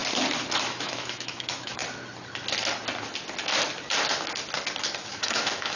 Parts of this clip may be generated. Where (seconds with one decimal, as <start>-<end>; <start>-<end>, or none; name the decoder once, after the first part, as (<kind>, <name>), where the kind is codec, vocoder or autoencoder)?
0.6-1.8 (autoencoder, DAC-VAE); 5.1-5.8